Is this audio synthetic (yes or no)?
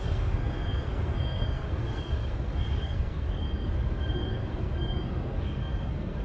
yes